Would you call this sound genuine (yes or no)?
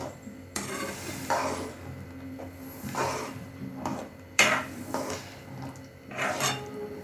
no